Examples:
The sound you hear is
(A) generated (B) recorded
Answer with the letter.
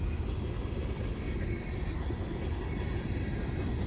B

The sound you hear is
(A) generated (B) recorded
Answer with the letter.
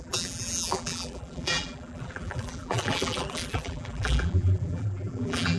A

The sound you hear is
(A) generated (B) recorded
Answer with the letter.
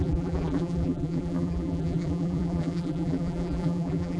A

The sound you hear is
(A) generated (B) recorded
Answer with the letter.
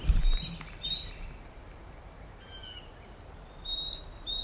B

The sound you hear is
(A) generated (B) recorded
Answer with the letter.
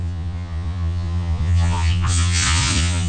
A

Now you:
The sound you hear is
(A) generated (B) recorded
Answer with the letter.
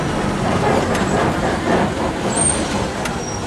B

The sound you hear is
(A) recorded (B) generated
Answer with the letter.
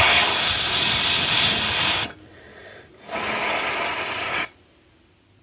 A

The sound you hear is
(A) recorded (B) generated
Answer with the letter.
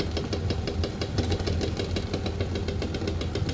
A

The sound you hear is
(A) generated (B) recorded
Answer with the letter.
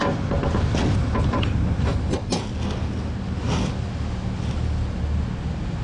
B